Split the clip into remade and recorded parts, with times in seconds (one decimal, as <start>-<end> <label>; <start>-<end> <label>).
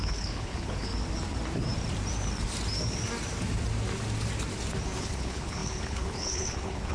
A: 0.0-0.9 remade; 0.9-5.0 recorded; 5.0-6.9 remade